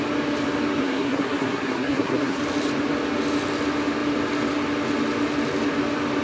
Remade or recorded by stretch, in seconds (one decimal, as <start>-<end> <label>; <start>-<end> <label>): 0.0-0.8 recorded; 0.8-2.4 remade; 2.4-6.2 recorded